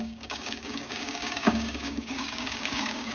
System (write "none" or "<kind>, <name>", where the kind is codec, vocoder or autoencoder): codec, DAC